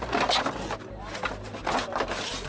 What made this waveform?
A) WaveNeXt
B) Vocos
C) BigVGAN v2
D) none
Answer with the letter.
D